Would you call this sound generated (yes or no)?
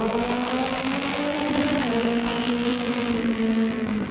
yes